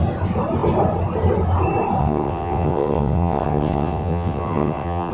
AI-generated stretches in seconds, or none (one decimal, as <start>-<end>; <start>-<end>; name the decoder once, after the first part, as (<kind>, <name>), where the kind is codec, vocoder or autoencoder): 2.0-5.1 (vocoder, WaveNeXt)